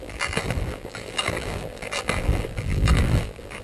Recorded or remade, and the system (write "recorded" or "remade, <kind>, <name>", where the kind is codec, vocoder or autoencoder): remade, vocoder, BigVGAN v2